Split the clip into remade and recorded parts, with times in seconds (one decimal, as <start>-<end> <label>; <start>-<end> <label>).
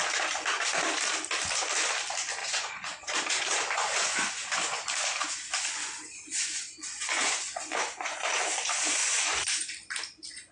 0.0-2.4 recorded; 2.4-4.8 remade; 4.8-5.8 recorded; 5.8-8.3 remade; 8.3-9.0 recorded; 9.0-9.7 remade; 9.7-10.5 recorded